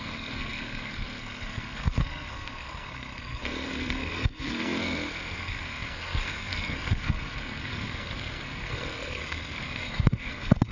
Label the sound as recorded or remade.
remade